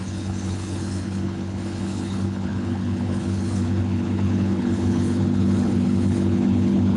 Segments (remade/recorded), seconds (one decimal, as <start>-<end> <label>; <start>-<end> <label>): 0.0-7.0 remade